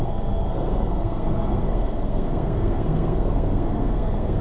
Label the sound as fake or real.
fake